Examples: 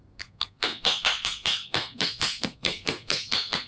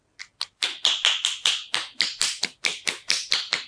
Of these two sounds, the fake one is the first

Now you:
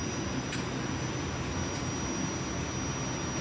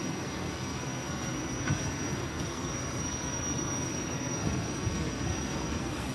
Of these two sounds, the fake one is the second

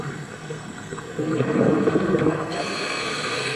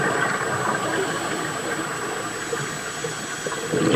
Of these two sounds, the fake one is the first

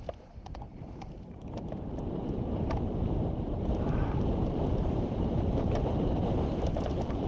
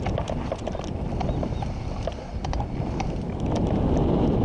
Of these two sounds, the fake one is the first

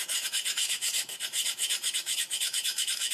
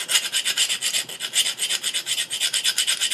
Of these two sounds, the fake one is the first